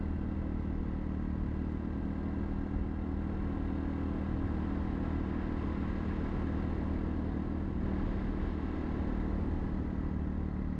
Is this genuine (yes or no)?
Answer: yes